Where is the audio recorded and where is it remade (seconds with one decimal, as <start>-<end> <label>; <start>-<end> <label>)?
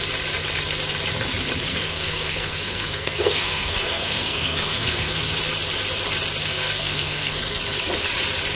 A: 0.0-1.7 recorded; 1.7-5.4 remade; 5.4-6.4 recorded; 6.4-7.6 remade; 7.6-8.6 recorded